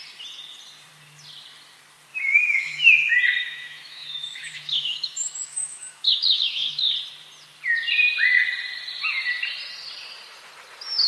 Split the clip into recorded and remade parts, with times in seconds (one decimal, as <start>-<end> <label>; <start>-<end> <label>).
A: 0.0-2.1 recorded; 2.1-2.9 remade; 2.9-3.4 recorded; 3.4-6.9 remade; 6.9-11.1 recorded